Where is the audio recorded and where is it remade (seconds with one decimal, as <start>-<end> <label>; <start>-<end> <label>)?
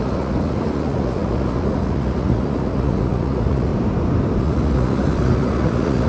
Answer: 0.0-3.7 remade; 3.7-4.4 recorded; 4.4-6.1 remade